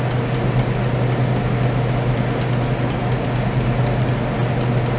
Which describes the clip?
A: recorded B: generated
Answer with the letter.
A